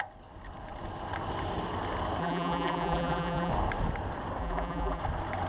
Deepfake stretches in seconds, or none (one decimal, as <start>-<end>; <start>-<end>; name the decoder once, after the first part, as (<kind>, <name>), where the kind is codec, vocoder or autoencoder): 2.2-3.5 (vocoder, BigVGAN v2); 4.4-5.0